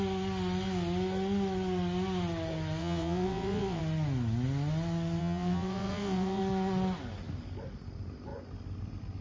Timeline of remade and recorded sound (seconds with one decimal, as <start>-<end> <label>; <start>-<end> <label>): 0.0-2.8 recorded; 2.8-3.8 remade; 3.8-5.2 recorded; 5.2-6.4 remade; 6.4-9.2 recorded